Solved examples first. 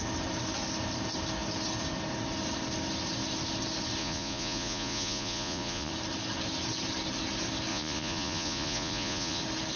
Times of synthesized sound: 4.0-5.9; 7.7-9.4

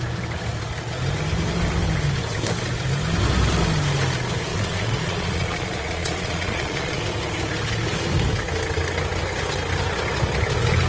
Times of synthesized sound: 4.5-7.0